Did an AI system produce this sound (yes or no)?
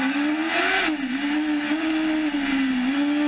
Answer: no